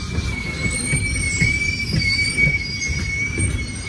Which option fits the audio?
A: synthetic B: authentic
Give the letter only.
B